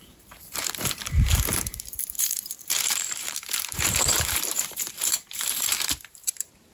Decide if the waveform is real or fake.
fake